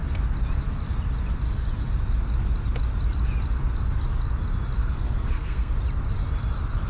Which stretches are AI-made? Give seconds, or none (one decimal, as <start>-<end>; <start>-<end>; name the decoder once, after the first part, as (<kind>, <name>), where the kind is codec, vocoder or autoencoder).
4.8-5.7 (codec, SNAC)